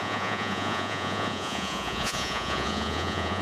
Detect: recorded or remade remade